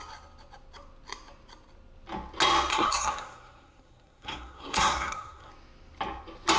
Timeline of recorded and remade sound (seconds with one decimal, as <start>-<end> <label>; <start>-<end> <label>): 0.0-2.7 recorded; 2.7-5.5 remade; 5.5-6.6 recorded